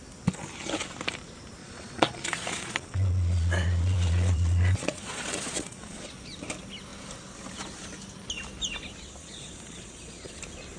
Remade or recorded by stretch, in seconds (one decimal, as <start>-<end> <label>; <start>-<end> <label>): 0.0-1.6 recorded; 1.6-6.1 remade; 6.1-9.2 recorded; 9.2-10.4 remade; 10.4-10.8 recorded